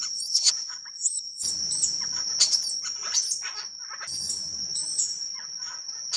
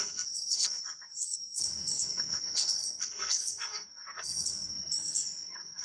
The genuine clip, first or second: first